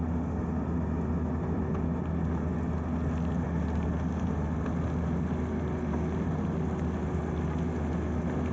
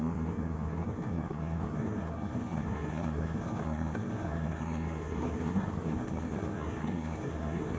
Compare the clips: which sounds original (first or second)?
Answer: first